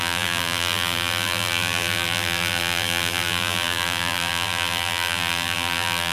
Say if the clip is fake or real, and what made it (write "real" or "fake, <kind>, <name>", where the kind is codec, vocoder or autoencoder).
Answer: fake, vocoder, BigVGAN v2